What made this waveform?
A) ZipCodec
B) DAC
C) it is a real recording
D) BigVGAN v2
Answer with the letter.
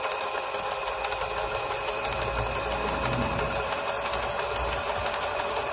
C